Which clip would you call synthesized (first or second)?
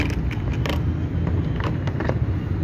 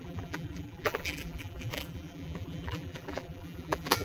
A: second